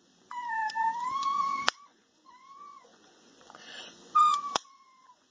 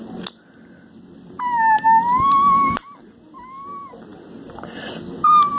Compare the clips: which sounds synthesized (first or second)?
first